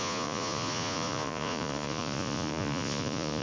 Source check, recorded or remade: remade